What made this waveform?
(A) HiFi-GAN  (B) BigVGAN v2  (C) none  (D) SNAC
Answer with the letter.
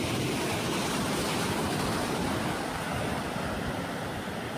C